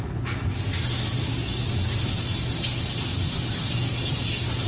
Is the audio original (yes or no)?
yes